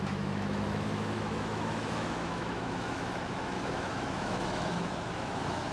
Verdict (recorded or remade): remade